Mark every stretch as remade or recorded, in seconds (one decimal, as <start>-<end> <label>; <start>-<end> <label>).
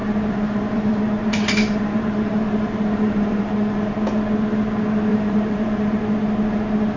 0.0-3.9 remade; 3.9-5.1 recorded; 5.1-6.0 remade; 6.0-7.0 recorded